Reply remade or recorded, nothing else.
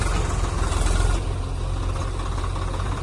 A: recorded